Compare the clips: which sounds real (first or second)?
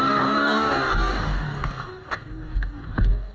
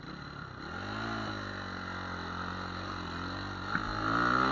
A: second